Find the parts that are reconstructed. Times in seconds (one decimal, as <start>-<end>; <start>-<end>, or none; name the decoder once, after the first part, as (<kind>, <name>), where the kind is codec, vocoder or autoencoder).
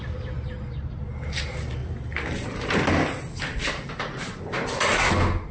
none